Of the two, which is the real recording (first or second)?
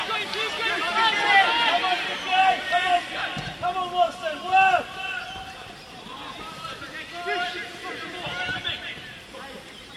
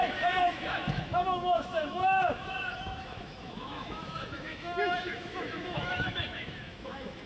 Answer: first